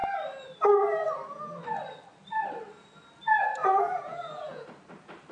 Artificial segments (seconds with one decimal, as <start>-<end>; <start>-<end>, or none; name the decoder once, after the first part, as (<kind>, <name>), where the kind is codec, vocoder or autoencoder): 3.6-4.6 (vocoder, Vocos)